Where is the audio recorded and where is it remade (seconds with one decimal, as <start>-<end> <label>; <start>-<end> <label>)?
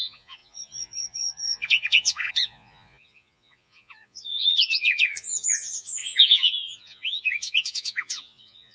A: 0.0-8.7 remade